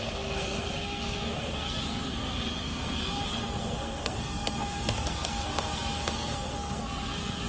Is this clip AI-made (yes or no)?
yes